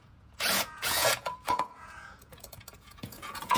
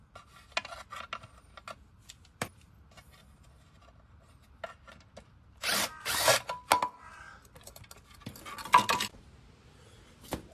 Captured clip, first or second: second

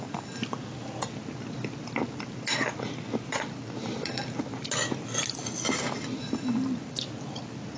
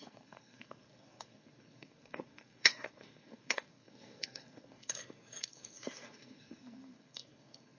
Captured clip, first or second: first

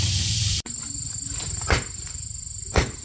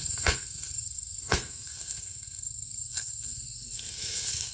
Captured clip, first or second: first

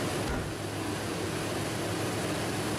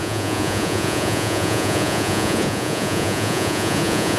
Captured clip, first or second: first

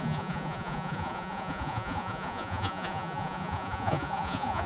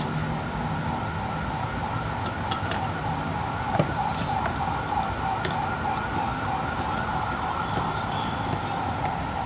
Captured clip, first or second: second